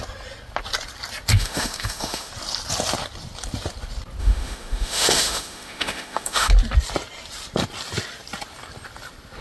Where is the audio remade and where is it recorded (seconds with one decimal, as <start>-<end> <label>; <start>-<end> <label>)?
0.0-1.3 recorded; 1.3-2.3 remade; 2.3-4.2 recorded; 4.2-6.5 remade; 6.5-9.4 recorded